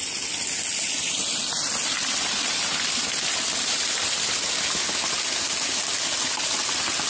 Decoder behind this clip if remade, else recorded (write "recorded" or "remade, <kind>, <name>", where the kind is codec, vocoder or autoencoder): recorded